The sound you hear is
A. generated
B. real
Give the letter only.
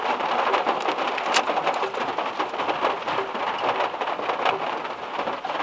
B